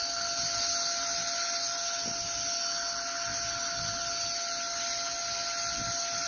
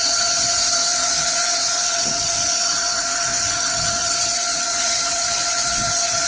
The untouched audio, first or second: first